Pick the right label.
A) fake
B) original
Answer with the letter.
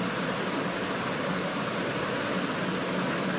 B